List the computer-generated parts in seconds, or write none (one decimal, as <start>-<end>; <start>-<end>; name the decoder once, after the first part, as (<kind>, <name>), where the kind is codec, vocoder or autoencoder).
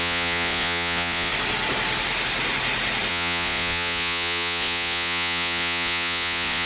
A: 0.0-1.3 (vocoder, Vocos); 3.1-6.7